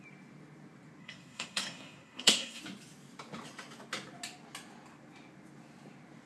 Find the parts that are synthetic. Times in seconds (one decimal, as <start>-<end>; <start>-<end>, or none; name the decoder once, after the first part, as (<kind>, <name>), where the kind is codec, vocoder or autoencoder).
1.0-2.6 (codec, SNAC)